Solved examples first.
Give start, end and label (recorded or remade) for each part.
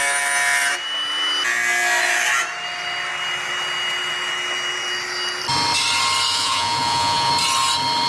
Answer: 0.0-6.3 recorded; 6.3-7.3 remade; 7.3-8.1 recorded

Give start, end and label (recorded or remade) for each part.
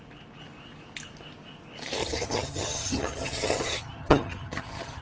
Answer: 0.0-2.0 recorded; 2.0-5.0 remade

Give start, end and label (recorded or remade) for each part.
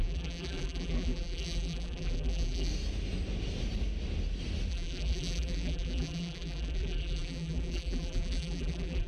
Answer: 0.0-2.7 remade; 2.7-4.7 recorded; 4.7-9.1 remade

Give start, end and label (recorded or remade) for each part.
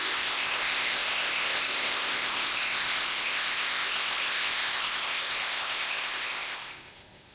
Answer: 0.0-7.3 remade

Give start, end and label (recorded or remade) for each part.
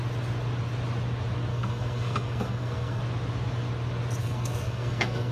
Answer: 0.0-1.5 recorded; 1.5-3.0 remade; 3.0-4.2 recorded; 4.2-5.3 remade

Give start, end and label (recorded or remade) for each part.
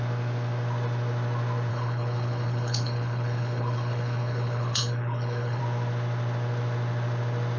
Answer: 0.0-1.7 recorded; 1.7-5.6 remade; 5.6-7.6 recorded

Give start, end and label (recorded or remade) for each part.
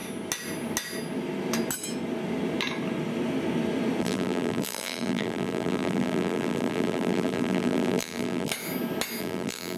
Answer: 0.0-4.0 recorded; 4.0-8.5 remade; 8.5-9.2 recorded; 9.2-9.8 remade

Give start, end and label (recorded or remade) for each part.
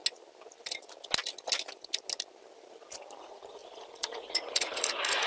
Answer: 0.0-3.2 recorded; 3.2-5.3 remade